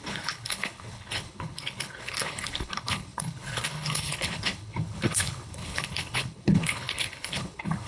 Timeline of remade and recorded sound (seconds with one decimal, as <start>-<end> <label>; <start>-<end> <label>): 0.0-7.9 remade